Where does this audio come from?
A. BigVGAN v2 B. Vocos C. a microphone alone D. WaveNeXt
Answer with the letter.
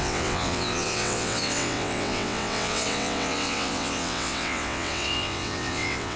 D